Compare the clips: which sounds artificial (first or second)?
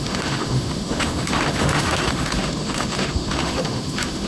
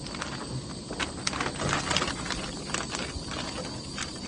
first